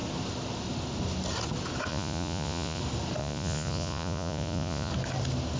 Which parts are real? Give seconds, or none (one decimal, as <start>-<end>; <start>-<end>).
0.0-1.9; 2.8-3.2; 4.9-5.6